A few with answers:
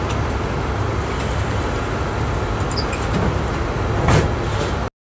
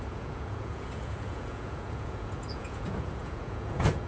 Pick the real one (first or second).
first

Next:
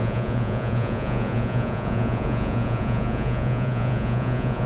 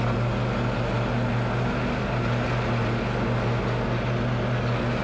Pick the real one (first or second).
second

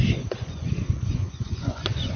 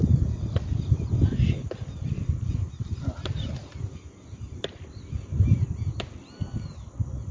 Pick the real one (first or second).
second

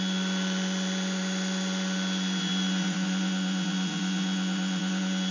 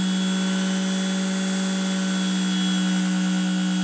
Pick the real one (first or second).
second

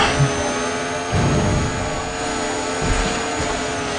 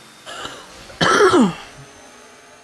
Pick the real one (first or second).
first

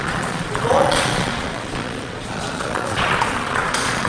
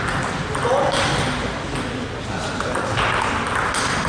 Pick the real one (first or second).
second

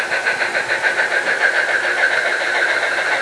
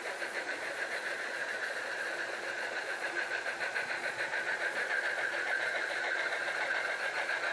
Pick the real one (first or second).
first